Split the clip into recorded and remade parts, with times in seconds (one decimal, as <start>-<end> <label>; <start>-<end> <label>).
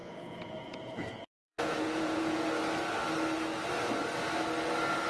0.0-2.5 remade; 2.5-5.1 recorded